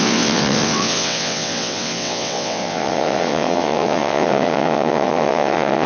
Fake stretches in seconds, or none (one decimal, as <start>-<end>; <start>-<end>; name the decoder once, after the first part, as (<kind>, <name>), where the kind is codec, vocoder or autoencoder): 0.0-5.9 (vocoder, WaveNeXt)